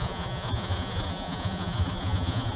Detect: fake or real fake